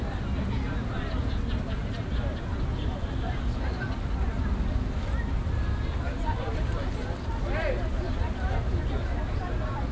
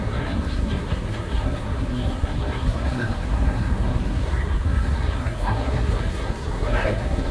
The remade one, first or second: second